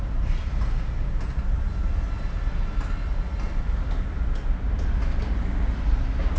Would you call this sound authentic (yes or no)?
yes